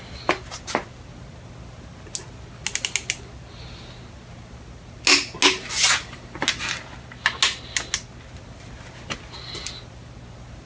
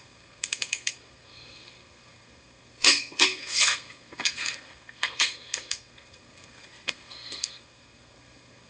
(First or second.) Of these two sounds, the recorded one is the first